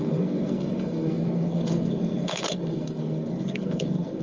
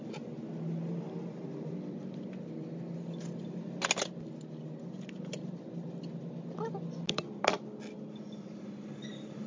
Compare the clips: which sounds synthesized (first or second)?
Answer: first